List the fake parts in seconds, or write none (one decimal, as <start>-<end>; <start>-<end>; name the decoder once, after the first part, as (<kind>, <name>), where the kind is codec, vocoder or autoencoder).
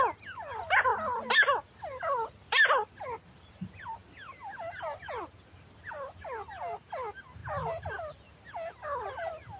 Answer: none